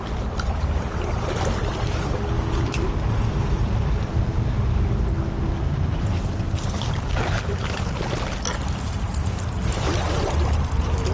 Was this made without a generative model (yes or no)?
yes